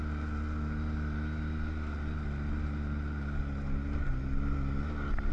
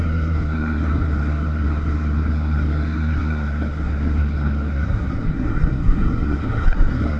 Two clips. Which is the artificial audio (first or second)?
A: second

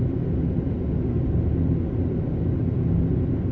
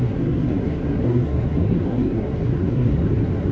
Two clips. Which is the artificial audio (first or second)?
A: second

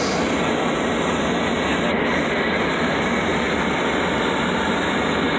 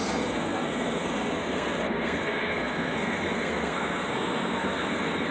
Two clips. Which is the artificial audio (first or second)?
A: second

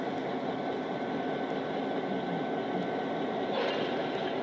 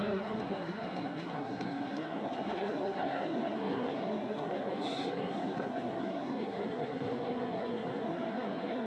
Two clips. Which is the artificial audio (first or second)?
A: second